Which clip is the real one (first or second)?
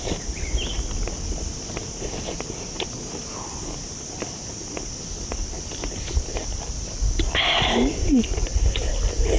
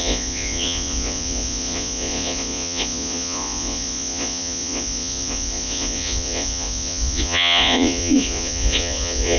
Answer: first